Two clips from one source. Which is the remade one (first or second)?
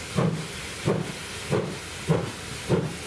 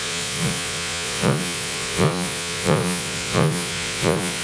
second